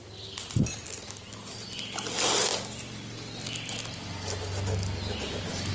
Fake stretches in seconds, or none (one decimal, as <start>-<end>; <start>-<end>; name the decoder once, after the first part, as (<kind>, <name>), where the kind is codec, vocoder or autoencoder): none